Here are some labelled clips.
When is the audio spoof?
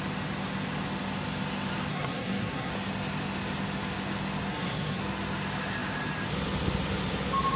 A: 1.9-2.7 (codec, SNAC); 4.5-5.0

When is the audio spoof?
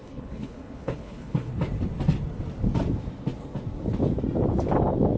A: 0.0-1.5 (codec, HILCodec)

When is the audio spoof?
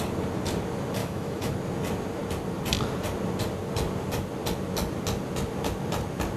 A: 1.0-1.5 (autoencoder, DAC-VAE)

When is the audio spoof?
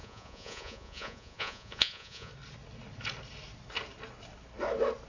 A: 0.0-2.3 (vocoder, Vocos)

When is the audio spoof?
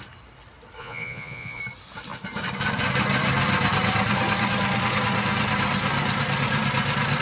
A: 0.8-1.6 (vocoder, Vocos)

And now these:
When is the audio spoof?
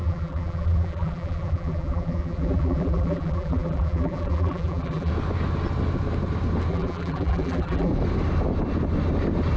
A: 0.0-5.1 (vocoder, BigVGAN v2); 6.7-7.9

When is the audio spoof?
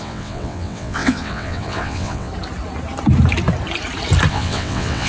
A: 0.0-2.3 (vocoder, WaveNeXt); 4.3-5.1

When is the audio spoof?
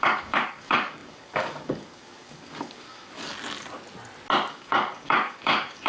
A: 0.0-3.3 (codec, DAC); 4.5-5.9